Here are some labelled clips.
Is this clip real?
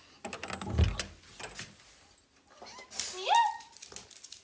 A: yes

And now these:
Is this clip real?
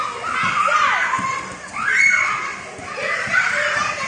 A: yes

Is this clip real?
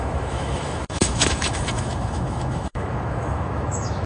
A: no